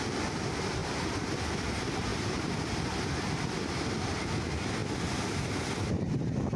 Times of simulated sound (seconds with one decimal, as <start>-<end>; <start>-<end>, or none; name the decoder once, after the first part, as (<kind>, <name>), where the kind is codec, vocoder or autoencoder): 0.8-1.3 (vocoder, BigVGAN v2)